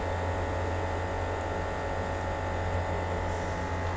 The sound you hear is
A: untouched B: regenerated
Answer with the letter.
A